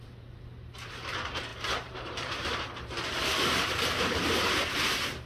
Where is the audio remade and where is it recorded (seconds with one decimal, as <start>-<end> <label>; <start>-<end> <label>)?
0.0-5.3 remade

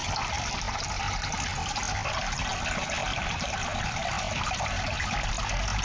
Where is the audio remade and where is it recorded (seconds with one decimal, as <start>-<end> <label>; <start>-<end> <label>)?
0.0-0.6 remade; 0.6-3.0 recorded; 3.0-5.3 remade; 5.3-5.8 recorded

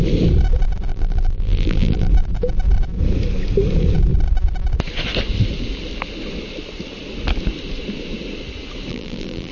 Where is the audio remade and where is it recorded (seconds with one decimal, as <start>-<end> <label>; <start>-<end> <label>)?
0.0-0.9 recorded; 0.9-2.1 remade; 2.1-8.9 recorded; 8.9-9.5 remade

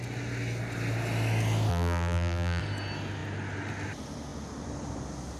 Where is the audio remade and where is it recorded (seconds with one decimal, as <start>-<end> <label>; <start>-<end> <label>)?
0.0-1.7 recorded; 1.7-2.6 remade; 2.6-5.4 recorded

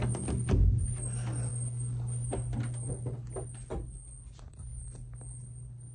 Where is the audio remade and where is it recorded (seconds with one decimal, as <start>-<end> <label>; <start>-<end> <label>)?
0.0-5.9 recorded